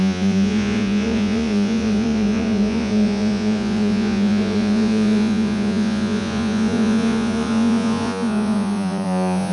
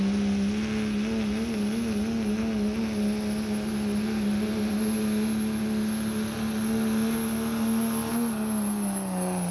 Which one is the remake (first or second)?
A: first